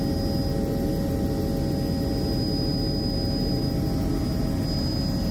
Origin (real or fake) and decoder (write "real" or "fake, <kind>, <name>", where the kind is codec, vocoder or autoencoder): real